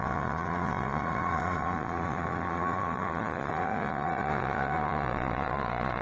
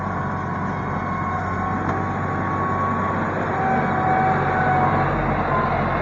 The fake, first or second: first